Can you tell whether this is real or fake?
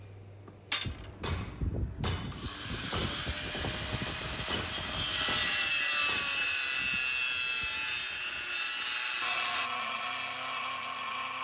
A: real